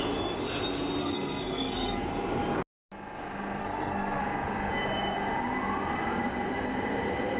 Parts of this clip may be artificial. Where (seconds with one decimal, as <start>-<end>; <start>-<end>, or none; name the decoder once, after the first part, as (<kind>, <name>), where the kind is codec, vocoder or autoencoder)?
1.0-2.1 (codec, SNAC); 3.6-4.2